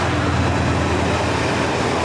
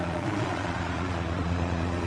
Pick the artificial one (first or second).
second